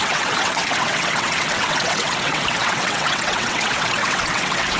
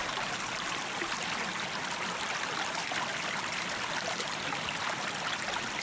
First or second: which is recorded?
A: second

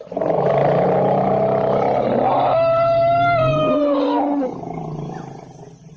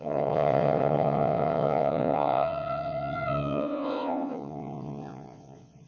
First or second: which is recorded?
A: first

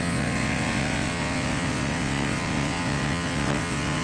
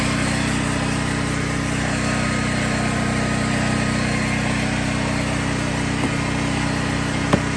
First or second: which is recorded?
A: second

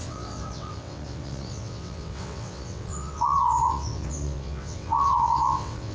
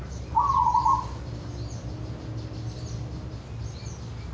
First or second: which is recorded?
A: second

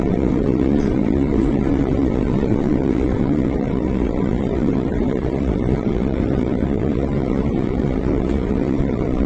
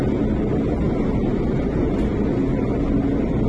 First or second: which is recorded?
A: second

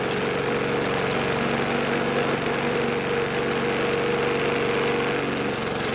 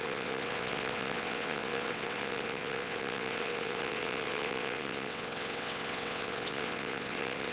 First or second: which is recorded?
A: first